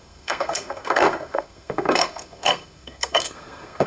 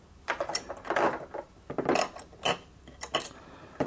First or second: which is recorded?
second